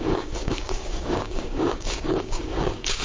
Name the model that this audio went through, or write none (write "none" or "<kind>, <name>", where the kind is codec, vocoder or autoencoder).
codec, DAC